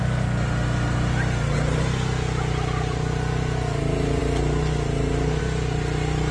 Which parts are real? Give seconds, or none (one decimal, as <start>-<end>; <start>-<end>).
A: 0.0-6.3